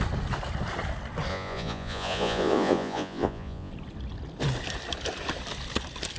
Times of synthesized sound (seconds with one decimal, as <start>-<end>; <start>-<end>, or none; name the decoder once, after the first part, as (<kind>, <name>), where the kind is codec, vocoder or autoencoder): 1.3-3.7 (vocoder, Vocos)